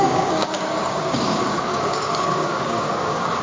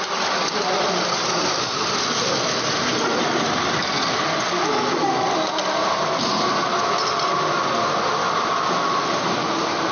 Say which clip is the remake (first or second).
first